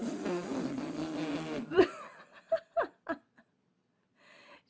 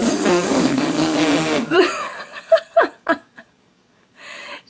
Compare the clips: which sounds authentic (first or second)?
first